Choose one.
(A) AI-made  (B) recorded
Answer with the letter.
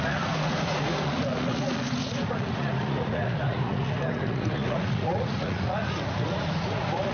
A